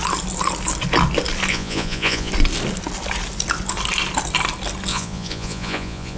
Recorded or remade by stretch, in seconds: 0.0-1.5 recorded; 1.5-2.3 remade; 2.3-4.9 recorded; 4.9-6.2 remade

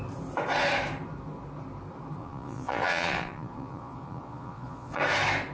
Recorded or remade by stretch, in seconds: 0.0-2.2 recorded; 2.2-5.0 remade; 5.0-5.5 recorded

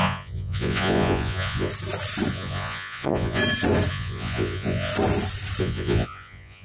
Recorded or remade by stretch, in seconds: 0.0-1.7 remade; 1.7-2.3 recorded; 2.3-3.4 remade; 3.4-3.9 recorded; 3.9-4.9 remade; 4.9-5.6 recorded; 5.6-6.6 remade

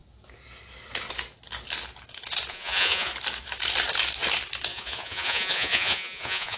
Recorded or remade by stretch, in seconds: 0.0-2.5 recorded; 2.5-3.1 remade; 3.1-4.7 recorded; 4.7-6.6 remade

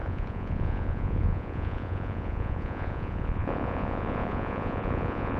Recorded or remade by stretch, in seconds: 0.0-5.4 remade

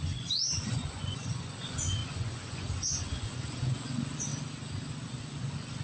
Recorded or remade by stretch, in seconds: 0.0-4.3 remade; 4.3-5.2 recorded; 5.2-5.8 remade